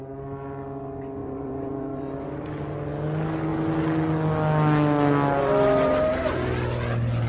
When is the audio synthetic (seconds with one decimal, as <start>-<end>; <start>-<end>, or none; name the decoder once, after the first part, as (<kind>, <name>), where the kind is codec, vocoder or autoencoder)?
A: 1.2-2.5 (vocoder, BigVGAN v2)